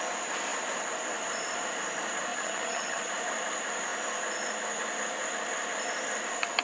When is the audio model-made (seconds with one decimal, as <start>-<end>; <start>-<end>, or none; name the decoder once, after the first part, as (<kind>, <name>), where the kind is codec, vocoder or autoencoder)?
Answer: 2.3-3.1 (vocoder, HiFi-GAN)